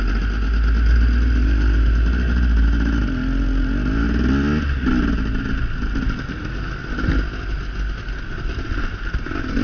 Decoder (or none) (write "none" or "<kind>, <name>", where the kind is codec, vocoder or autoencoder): none